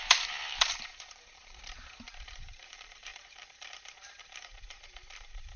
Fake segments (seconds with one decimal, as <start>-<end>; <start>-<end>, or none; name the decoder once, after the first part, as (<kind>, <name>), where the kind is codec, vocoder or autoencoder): 0.0-5.6 (vocoder, BigVGAN v2)